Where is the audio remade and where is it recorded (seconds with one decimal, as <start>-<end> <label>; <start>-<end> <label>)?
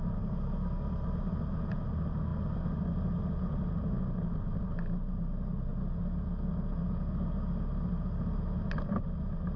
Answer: 0.0-9.6 recorded